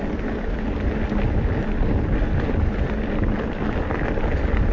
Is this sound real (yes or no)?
yes